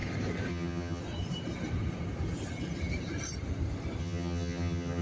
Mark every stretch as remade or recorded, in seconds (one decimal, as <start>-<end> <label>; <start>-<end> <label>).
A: 0.0-0.5 recorded; 0.5-1.0 remade; 1.0-4.0 recorded; 4.0-5.0 remade